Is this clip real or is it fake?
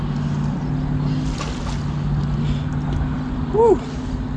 real